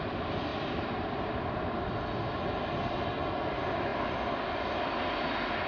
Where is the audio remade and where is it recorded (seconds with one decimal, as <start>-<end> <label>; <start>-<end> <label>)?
0.0-0.5 recorded; 0.5-1.3 remade; 1.3-5.7 recorded